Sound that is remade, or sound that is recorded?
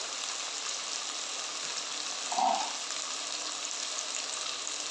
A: recorded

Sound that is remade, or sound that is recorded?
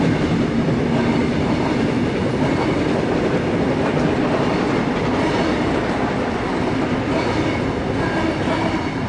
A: recorded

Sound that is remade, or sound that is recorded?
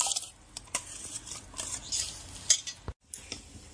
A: recorded